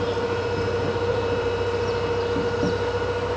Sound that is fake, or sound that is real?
real